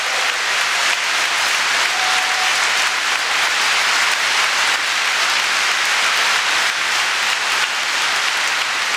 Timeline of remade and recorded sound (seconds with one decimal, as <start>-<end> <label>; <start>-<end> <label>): 0.0-9.0 recorded

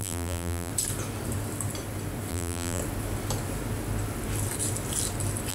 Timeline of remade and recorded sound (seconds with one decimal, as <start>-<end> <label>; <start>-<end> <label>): 0.0-0.7 remade; 0.7-2.3 recorded; 2.3-2.8 remade; 2.8-5.5 recorded

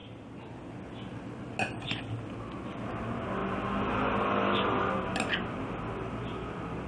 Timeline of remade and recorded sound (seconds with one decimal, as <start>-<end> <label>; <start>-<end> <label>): 0.0-6.9 recorded

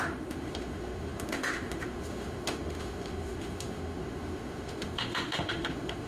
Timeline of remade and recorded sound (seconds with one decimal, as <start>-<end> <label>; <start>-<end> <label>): 0.0-6.1 remade

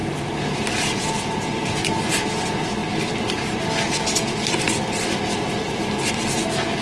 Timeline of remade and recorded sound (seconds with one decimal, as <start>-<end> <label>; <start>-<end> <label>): 0.0-1.0 remade; 1.0-6.8 recorded